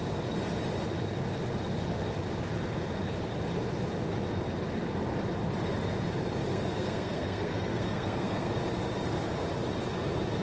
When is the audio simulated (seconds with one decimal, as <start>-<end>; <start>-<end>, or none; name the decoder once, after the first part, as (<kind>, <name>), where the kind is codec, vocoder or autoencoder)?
6.5-8.5 (codec, SNAC)